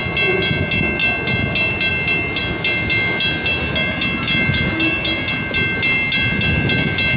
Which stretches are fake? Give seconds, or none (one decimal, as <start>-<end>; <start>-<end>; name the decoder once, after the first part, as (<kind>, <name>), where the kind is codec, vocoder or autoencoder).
none